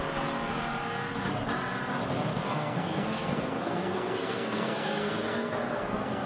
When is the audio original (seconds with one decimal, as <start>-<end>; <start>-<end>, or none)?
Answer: 0.0-2.3